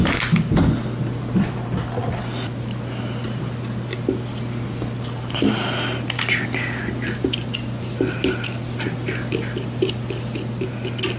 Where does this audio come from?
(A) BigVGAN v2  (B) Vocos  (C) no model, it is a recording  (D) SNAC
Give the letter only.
C